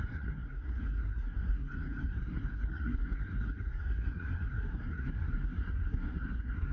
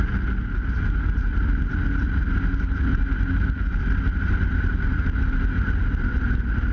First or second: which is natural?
second